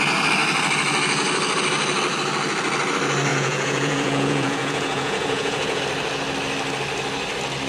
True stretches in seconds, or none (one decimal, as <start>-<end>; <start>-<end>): 0.0-3.3; 5.8-7.7

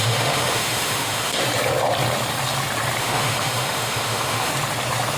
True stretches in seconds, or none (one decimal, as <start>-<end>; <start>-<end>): 1.4-3.0; 4.5-5.2

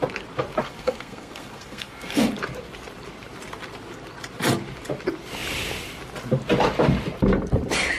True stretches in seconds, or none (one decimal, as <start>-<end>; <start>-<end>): 0.0-0.6; 2.3-8.0

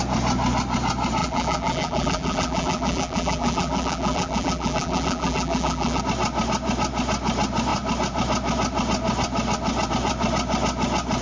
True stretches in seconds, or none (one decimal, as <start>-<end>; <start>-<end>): 0.0-1.2; 6.0-11.2

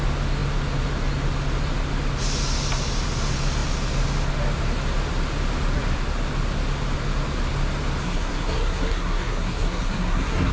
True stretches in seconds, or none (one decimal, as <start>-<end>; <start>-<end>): 0.0-8.0